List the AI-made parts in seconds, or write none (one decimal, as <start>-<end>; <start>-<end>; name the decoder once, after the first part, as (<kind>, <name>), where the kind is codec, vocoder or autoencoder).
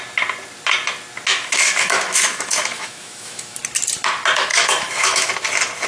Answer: 1.3-3.6 (autoencoder, DAC-VAE); 4.5-5.3